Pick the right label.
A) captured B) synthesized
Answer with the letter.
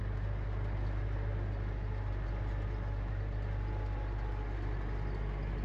A